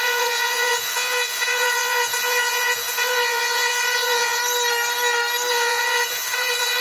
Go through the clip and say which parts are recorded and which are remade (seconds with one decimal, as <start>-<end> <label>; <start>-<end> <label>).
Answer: 0.0-4.4 remade; 4.4-5.5 recorded; 5.5-6.8 remade